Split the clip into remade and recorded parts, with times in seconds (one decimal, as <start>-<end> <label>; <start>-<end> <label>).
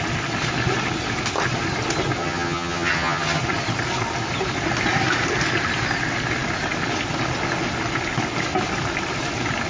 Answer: 0.0-2.2 recorded; 2.2-3.4 remade; 3.4-9.7 recorded